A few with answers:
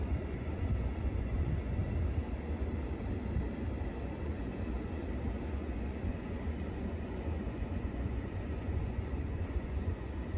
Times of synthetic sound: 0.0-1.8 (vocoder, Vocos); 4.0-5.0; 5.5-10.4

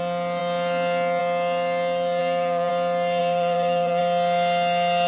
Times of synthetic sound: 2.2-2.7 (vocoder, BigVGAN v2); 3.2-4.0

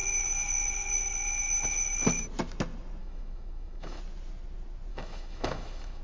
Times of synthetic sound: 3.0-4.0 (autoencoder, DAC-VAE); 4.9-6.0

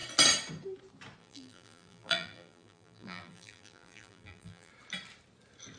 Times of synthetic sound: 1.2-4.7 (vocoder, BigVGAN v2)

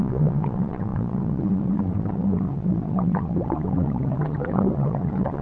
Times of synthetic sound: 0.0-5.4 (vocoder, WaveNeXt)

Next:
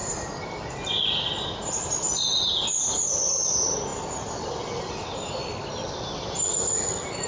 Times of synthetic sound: none

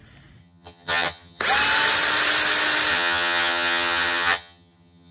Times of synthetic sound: 0.4-1.4 (vocoder, HiFi-GAN); 2.9-5.1

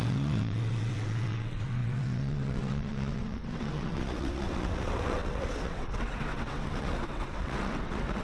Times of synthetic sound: 0.0-8.2 (vocoder, WaveNeXt)